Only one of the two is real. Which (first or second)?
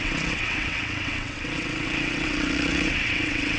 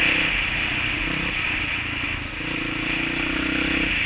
second